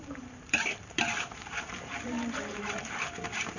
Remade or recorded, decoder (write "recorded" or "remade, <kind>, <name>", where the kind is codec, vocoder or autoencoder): remade, vocoder, BigVGAN v2